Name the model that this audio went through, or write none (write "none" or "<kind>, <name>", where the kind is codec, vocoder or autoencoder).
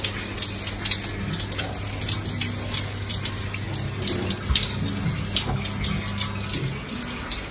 none